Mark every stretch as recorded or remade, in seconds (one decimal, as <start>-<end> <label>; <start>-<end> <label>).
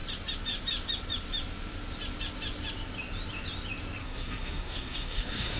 0.0-4.0 recorded; 4.0-5.6 remade